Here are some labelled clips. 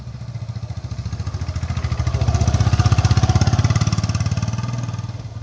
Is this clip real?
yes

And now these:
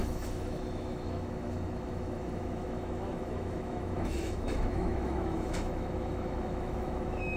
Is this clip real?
no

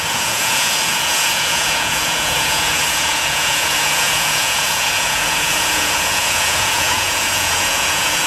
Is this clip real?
no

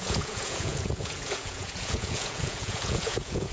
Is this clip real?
no